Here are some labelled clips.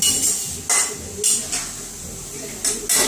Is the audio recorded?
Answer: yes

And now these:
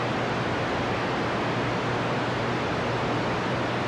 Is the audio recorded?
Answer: yes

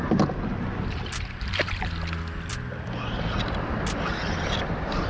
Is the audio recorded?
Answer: yes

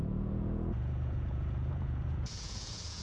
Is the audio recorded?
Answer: no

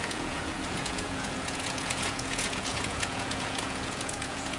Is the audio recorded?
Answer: no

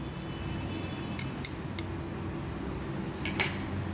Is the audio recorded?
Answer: yes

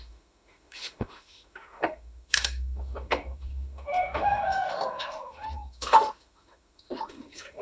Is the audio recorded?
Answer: no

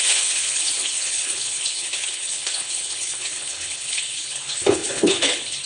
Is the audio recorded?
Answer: no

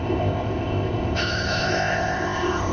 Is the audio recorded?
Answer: no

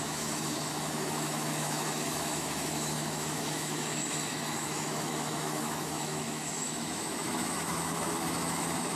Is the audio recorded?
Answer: no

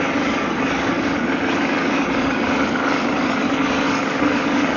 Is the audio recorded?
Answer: no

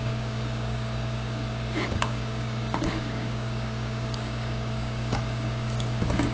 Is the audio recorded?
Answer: no